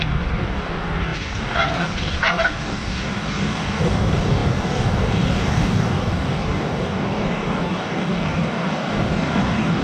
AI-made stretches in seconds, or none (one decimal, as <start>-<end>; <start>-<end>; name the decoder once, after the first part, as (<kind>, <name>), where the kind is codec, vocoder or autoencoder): 0.0-9.8 (codec, DAC)